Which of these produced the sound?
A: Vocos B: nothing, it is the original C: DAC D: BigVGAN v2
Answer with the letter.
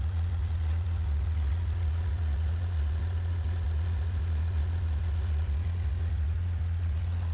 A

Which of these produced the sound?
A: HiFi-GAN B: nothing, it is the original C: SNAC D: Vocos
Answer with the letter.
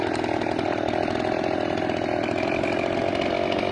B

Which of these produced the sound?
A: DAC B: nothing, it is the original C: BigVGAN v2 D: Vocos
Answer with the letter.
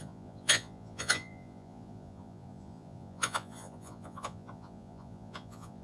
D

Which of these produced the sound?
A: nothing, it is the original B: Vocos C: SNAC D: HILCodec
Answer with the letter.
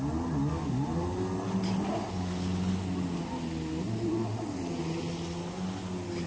A